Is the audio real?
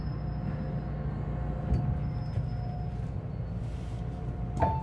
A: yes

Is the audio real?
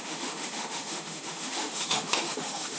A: no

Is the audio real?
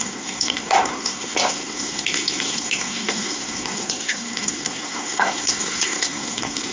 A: no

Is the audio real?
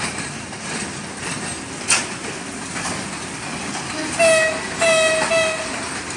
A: yes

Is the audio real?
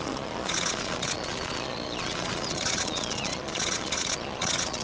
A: no